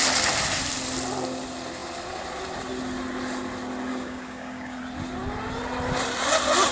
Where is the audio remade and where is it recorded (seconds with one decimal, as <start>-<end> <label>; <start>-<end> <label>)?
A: 0.0-3.9 recorded; 3.9-4.8 remade; 4.8-6.7 recorded